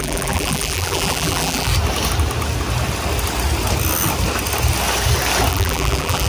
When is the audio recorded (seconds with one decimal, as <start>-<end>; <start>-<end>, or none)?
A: 1.7-5.5